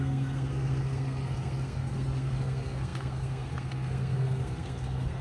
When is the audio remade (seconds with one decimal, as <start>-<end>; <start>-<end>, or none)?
0.0-5.2